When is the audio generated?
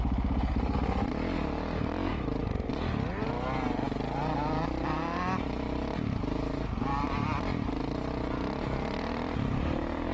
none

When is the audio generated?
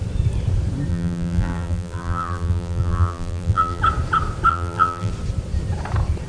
0.9-3.8 (vocoder, BigVGAN v2); 4.5-5.1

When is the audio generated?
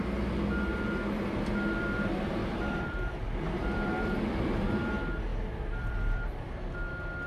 2.4-3.1 (vocoder, BigVGAN v2); 3.6-4.8; 5.3-6.4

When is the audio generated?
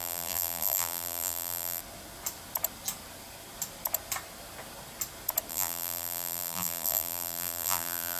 0.0-1.8 (vocoder, BigVGAN v2); 5.5-8.2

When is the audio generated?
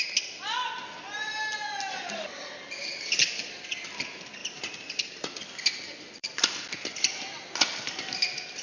6.2-7.1 (vocoder, BigVGAN v2)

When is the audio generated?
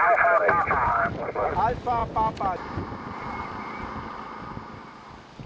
none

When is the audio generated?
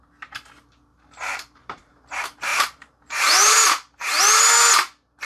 0.9-2.0 (vocoder, BigVGAN v2); 2.5-4.2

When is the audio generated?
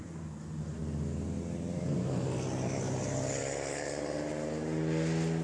none